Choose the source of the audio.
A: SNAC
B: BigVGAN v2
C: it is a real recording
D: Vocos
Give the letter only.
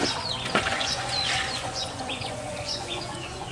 D